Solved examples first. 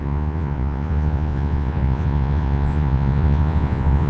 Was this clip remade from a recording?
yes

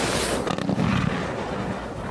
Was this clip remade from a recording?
no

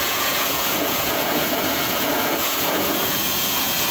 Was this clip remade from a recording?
yes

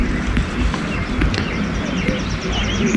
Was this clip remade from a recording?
no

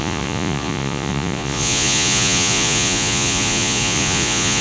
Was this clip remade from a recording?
yes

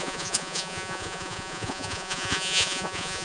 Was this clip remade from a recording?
yes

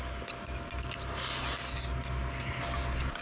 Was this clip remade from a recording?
no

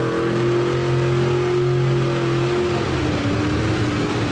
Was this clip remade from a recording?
no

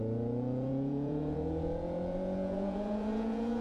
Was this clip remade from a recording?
yes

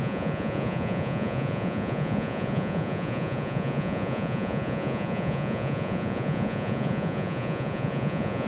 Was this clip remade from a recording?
yes